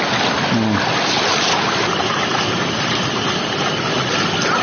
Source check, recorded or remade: recorded